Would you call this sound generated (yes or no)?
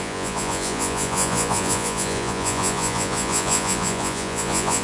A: yes